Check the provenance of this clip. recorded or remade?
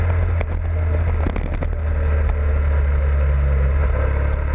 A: recorded